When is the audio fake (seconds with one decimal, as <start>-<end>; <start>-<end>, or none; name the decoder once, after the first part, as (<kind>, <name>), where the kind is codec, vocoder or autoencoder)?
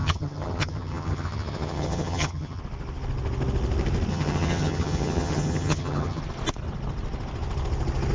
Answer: 0.0-2.6 (vocoder, HiFi-GAN); 4.1-6.2